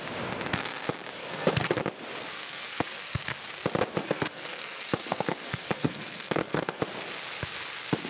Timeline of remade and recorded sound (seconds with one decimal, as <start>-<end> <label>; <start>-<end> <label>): 0.0-1.2 recorded; 1.2-1.8 remade; 1.8-2.3 recorded; 2.3-3.2 remade; 3.2-4.0 recorded; 4.0-6.8 remade; 6.8-8.1 recorded